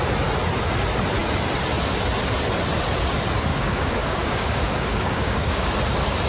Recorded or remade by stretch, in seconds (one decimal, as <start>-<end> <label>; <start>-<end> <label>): 0.0-3.5 recorded; 3.5-5.7 remade; 5.7-6.3 recorded